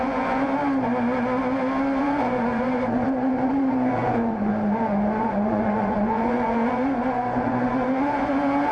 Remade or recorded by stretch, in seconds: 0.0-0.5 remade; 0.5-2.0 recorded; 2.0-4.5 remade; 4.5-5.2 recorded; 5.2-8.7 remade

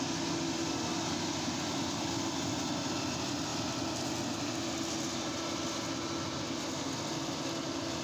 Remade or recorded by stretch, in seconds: 0.0-8.0 recorded

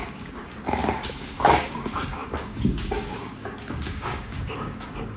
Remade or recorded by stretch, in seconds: 0.0-5.2 remade

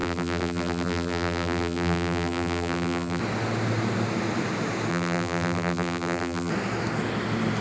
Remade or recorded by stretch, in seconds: 0.0-3.2 remade; 3.2-4.9 recorded; 4.9-6.5 remade; 6.5-7.6 recorded

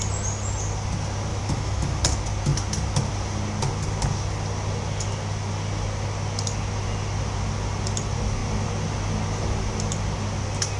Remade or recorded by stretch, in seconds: 0.0-1.3 recorded; 1.3-2.0 remade; 2.0-10.8 recorded

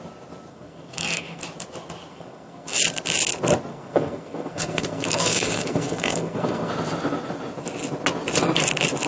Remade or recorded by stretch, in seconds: 0.0-0.5 recorded; 0.5-1.4 remade; 1.4-2.1 recorded; 2.1-2.8 remade; 2.8-3.7 recorded; 3.7-6.7 remade; 6.7-9.1 recorded

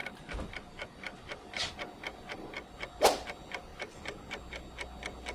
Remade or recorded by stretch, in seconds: 0.0-5.3 recorded

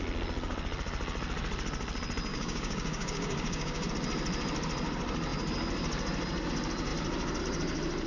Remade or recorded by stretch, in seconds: 0.0-2.3 recorded; 2.3-3.9 remade; 3.9-8.1 recorded